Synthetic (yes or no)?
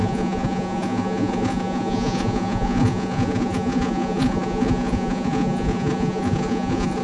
yes